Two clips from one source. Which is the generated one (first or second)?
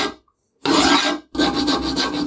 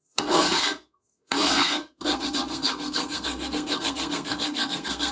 second